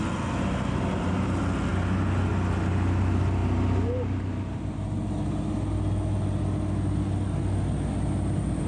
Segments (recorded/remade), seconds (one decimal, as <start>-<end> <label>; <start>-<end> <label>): 0.0-8.7 recorded